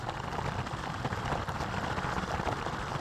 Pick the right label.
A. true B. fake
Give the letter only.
B